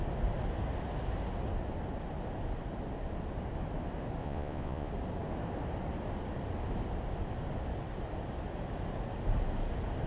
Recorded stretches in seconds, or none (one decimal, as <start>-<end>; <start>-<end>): 0.0-4.2; 4.9-10.1